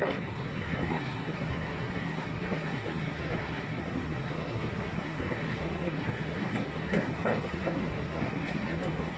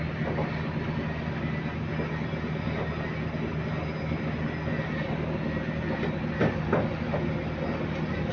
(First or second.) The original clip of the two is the second